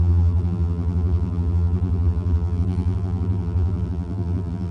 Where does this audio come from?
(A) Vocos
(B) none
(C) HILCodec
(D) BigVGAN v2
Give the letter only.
D